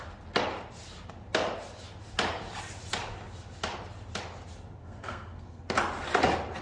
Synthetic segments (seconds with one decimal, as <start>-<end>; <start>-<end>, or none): 4.8-5.6